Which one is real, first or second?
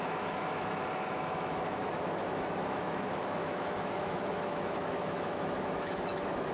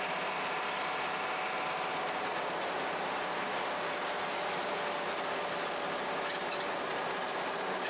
second